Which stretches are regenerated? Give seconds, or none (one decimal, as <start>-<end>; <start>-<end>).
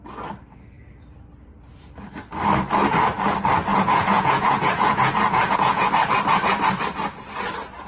3.7-5.9